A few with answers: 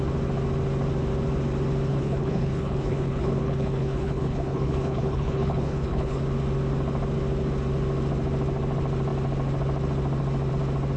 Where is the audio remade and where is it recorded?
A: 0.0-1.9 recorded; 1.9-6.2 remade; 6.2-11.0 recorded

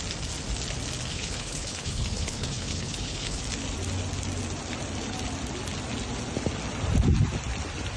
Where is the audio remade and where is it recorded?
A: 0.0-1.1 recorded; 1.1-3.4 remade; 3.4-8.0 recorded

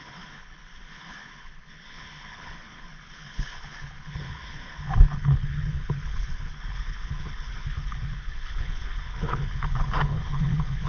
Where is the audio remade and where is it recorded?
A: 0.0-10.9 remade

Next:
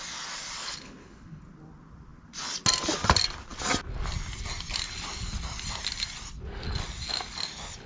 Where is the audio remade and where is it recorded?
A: 0.0-0.6 recorded; 0.6-1.4 remade; 1.4-7.9 recorded

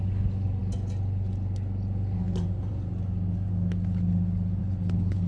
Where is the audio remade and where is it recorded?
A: 0.0-4.6 recorded; 4.6-5.3 remade

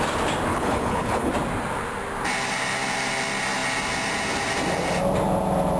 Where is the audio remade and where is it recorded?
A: 0.0-0.5 recorded; 0.5-1.3 remade; 1.3-5.8 recorded